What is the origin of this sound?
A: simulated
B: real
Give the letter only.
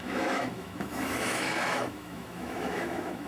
A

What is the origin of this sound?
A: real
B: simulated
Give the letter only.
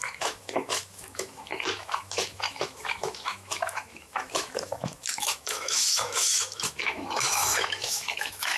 B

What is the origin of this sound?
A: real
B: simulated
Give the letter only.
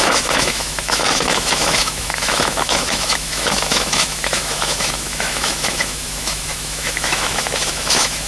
B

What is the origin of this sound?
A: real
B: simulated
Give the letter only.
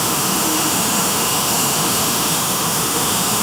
B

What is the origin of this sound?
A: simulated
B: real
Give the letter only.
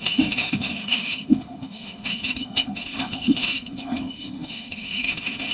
A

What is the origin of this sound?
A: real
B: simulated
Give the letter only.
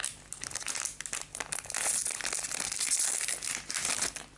A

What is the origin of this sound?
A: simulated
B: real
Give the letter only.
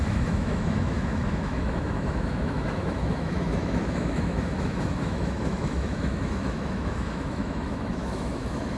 A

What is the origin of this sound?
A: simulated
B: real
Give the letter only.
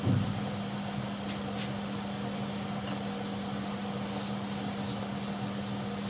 B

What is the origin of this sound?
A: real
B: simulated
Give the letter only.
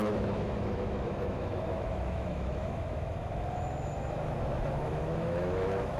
B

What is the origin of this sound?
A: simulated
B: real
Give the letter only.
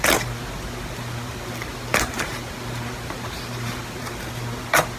B